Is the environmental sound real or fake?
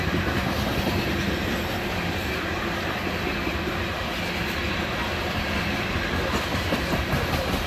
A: real